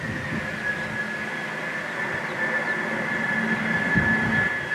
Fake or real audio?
real